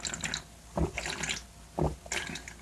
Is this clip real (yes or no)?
yes